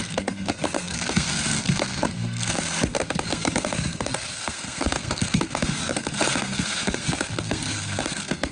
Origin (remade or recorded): remade